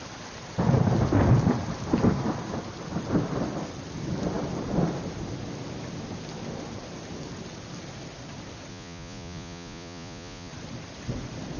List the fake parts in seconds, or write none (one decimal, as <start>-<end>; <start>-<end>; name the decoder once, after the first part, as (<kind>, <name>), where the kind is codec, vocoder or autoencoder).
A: 8.7-10.5 (vocoder, Vocos)